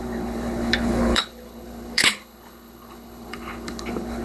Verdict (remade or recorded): remade